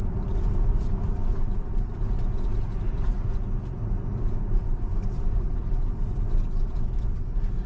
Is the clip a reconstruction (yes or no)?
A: no